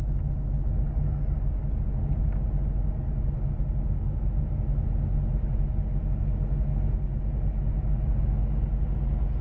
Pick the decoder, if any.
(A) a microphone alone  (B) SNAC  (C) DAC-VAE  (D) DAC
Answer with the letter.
A